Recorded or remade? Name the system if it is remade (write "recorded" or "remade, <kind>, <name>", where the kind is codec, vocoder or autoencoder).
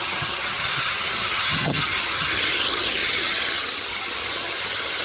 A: remade, vocoder, HiFi-GAN